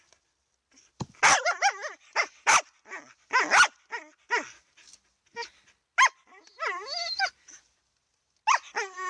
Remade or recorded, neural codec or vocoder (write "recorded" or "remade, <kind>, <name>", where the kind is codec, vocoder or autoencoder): recorded